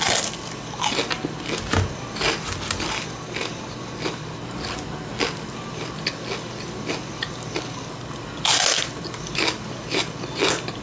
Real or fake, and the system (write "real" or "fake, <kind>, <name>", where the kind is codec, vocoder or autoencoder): real